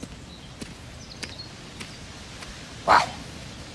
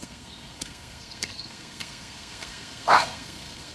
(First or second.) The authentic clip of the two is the first